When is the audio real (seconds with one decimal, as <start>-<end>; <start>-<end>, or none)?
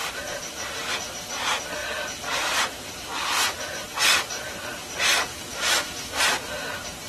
0.0-5.3; 6.2-7.1